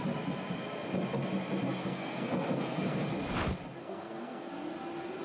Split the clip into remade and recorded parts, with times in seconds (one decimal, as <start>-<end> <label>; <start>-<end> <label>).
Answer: 0.0-1.8 recorded; 1.8-3.1 remade; 3.1-3.8 recorded; 3.8-4.5 remade; 4.5-5.2 recorded